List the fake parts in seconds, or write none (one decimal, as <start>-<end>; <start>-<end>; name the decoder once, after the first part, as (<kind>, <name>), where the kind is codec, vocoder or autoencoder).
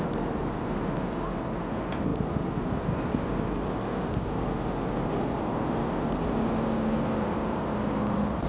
none